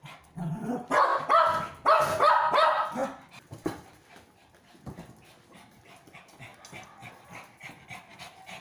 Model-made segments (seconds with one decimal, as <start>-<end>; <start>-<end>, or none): none